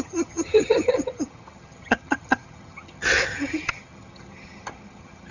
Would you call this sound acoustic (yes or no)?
no